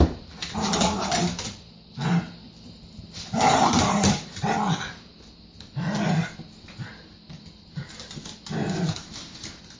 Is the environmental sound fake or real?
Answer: real